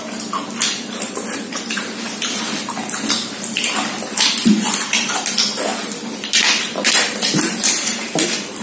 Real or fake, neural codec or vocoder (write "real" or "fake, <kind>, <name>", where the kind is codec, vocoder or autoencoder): fake, vocoder, BigVGAN v2